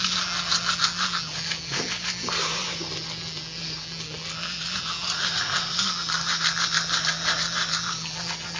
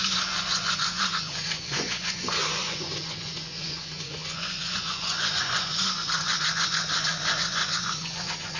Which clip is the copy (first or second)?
second